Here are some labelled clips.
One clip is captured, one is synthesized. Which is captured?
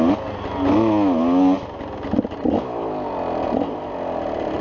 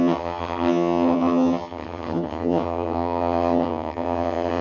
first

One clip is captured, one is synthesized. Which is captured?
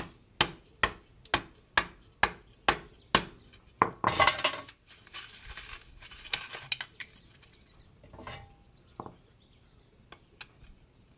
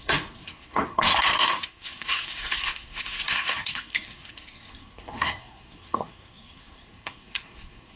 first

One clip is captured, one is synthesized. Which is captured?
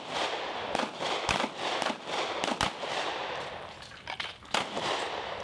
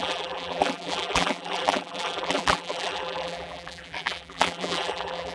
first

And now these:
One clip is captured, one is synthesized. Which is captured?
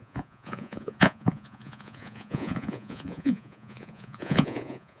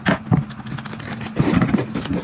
second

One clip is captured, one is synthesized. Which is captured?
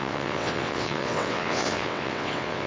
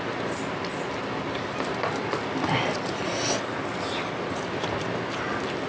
second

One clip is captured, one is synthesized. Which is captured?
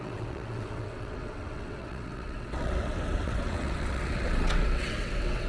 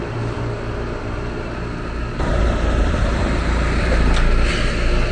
second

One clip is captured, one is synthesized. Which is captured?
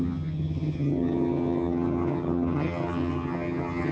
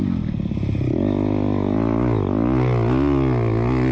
second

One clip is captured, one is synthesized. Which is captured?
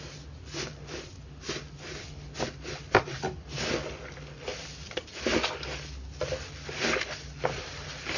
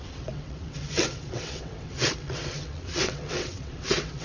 first